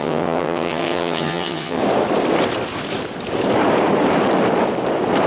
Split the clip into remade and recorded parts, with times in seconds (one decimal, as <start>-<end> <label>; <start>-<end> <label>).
0.0-1.8 remade; 1.8-5.3 recorded